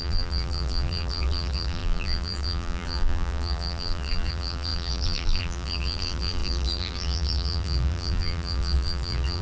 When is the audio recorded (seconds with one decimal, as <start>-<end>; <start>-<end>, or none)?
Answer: none